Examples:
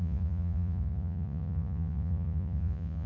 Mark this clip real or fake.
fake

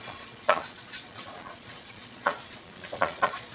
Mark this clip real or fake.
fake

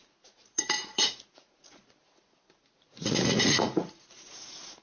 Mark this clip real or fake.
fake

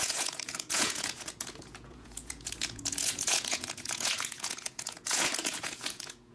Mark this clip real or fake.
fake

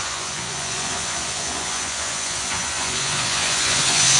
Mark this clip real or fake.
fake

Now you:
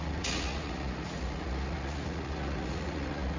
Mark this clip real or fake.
fake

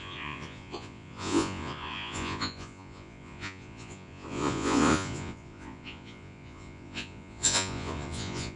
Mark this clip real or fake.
fake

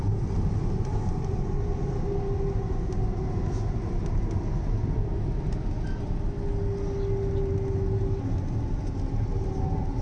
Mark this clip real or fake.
real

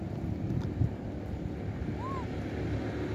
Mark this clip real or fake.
real